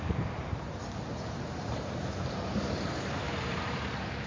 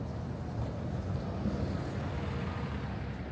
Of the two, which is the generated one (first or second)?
first